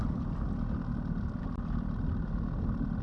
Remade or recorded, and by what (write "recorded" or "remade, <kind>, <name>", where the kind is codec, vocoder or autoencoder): recorded